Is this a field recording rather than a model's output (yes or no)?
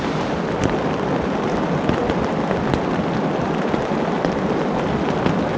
yes